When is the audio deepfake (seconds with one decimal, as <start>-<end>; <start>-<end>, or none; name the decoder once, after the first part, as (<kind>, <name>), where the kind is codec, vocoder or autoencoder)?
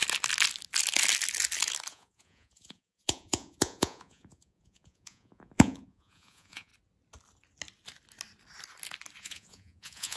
1.9-6.7 (vocoder, Vocos); 9.2-10.2